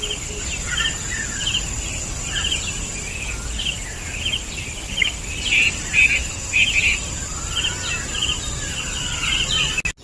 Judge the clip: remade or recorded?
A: recorded